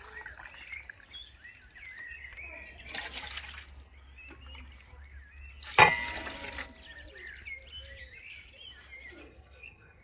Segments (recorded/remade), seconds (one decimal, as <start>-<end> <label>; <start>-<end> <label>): 0.0-9.2 recorded; 9.2-10.0 remade